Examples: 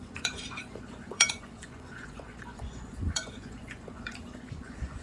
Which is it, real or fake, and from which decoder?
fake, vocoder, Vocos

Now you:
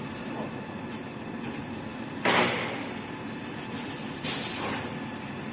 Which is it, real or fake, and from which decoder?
real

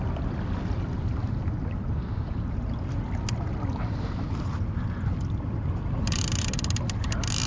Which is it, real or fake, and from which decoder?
real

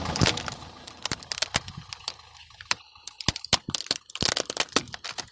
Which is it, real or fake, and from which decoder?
real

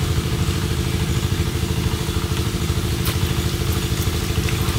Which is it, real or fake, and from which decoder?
real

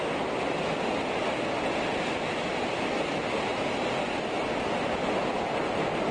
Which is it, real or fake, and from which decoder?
real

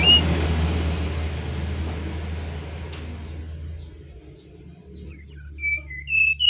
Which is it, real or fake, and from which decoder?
real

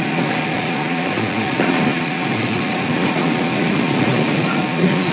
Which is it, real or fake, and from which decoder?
fake, vocoder, Vocos